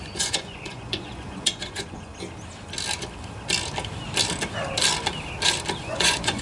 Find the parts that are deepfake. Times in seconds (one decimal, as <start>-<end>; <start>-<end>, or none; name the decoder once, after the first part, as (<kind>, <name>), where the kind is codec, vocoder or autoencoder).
0.0-2.1 (vocoder, Vocos); 5.8-6.4